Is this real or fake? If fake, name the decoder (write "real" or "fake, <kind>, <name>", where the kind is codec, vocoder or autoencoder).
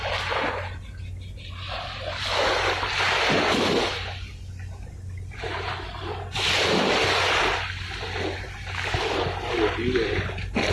real